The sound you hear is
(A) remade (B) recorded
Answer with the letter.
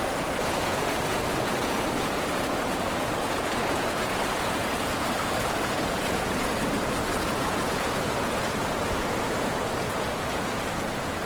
A